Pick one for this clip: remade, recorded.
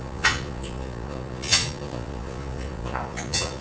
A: remade